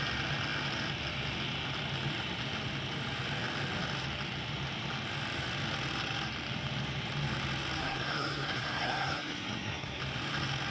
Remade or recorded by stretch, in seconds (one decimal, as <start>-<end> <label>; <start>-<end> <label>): 0.0-7.8 recorded; 7.8-10.0 remade; 10.0-10.7 recorded